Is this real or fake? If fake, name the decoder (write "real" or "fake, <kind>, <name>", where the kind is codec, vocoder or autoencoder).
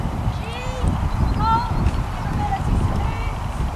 real